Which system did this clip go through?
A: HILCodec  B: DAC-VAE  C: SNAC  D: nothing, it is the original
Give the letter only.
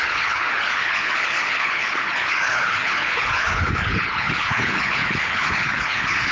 A